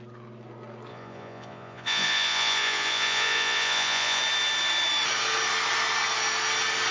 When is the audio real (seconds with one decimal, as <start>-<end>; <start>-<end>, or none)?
0.0-0.9; 4.2-6.9